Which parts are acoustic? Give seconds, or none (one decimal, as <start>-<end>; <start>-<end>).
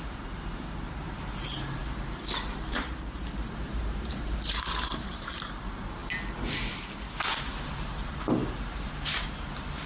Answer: 1.8-2.7; 6.0-7.1